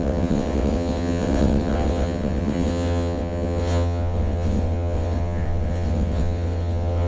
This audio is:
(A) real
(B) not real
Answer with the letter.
B